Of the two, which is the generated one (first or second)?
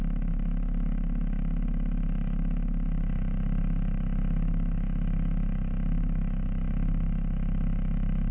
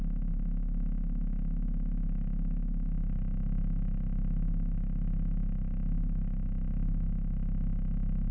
first